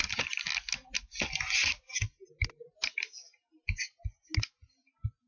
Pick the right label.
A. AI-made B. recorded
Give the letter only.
B